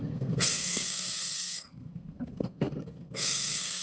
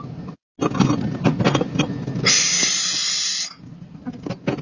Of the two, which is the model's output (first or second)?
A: first